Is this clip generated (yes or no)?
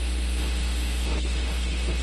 yes